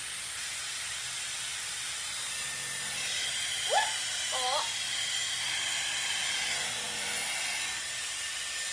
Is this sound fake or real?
real